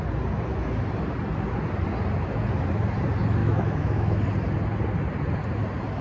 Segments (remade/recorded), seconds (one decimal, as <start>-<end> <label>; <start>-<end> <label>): 0.0-3.4 recorded; 3.4-4.2 remade; 4.2-6.0 recorded